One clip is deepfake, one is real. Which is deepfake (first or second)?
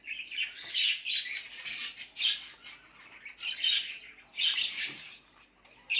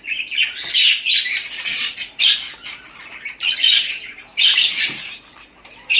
second